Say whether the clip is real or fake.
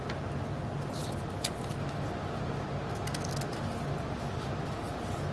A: real